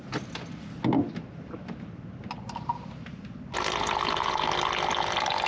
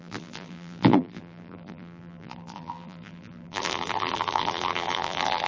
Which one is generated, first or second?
second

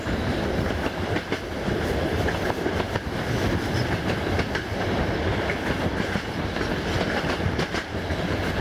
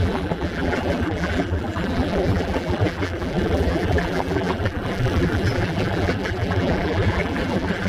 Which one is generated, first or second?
second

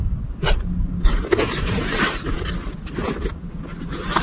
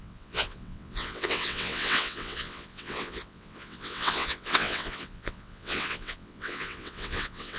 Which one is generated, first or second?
second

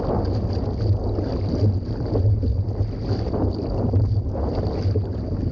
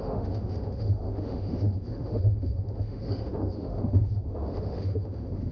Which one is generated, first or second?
second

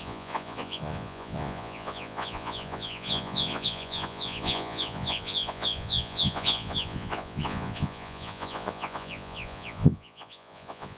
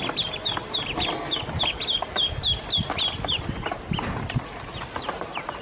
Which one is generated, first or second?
first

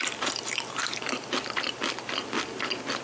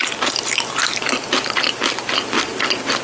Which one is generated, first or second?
first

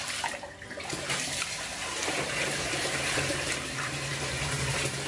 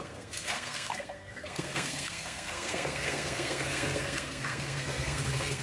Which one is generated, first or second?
second